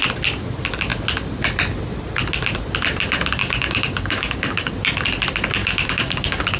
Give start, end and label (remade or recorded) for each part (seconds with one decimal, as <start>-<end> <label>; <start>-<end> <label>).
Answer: 0.0-3.4 recorded; 3.4-4.7 remade; 4.7-5.6 recorded; 5.6-6.6 remade